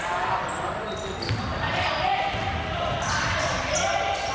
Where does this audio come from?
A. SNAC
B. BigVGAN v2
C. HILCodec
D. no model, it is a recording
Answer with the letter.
D